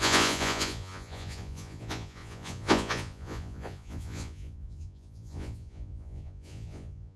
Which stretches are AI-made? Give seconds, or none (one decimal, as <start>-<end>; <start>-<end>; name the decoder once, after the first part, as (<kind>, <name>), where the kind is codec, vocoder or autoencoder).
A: 0.0-7.2 (vocoder, Vocos)